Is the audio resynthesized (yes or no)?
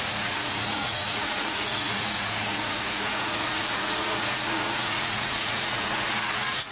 yes